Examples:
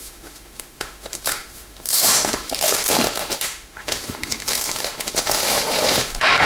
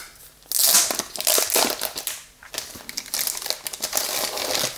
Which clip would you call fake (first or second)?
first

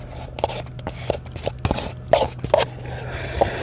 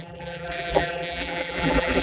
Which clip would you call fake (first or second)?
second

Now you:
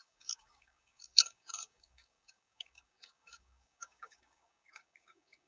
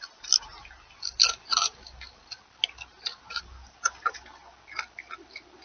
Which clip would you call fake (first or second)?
first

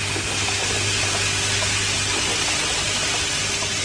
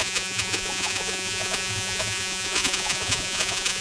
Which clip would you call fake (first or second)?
second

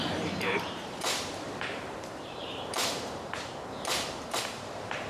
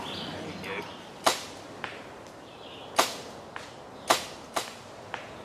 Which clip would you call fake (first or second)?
first